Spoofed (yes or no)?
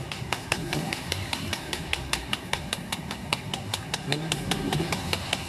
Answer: yes